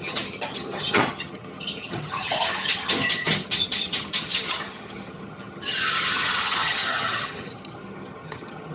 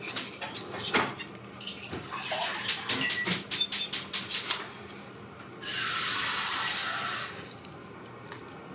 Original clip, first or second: second